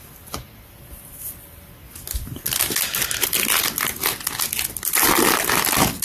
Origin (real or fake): real